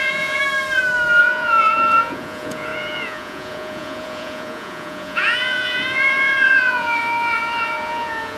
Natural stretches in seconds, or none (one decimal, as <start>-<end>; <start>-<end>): 0.4-1.2